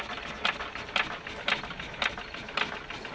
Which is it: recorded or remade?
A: recorded